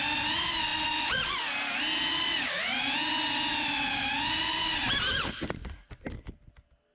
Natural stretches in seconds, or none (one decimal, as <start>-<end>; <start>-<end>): 0.0-6.9